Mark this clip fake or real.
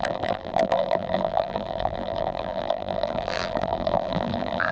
fake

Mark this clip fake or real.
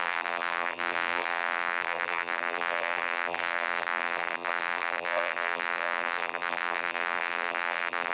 fake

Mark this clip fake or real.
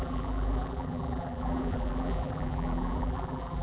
fake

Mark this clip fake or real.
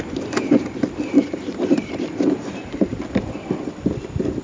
real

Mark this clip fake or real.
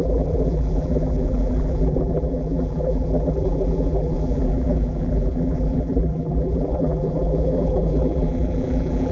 fake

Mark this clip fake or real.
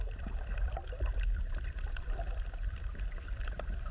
fake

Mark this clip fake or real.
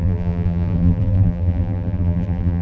fake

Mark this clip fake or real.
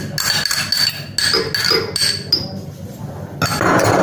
real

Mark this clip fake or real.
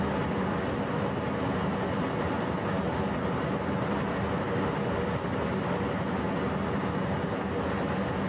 real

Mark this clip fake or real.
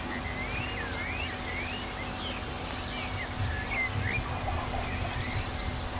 real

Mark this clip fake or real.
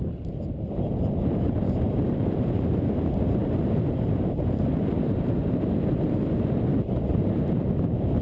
fake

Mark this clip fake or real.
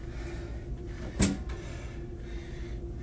real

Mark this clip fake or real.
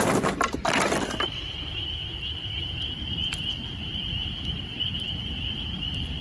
fake